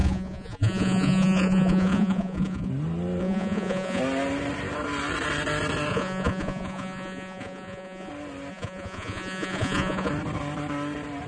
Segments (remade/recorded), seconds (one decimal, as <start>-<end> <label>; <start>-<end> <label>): 0.0-2.7 remade; 2.7-3.2 recorded; 3.2-4.0 remade; 4.0-5.9 recorded; 5.9-8.1 remade; 8.1-8.5 recorded; 8.5-10.1 remade; 10.1-11.3 recorded